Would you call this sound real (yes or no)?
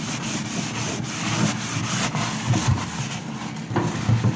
yes